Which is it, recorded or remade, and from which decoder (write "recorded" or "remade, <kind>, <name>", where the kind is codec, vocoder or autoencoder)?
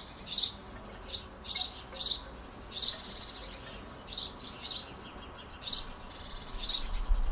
recorded